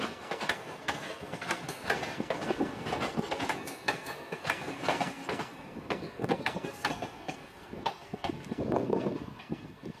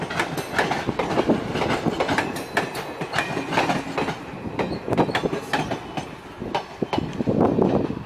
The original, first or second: second